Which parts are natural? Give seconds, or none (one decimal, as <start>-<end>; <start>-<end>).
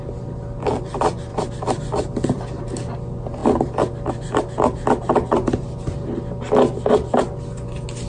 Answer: 0.0-1.3; 2.6-8.1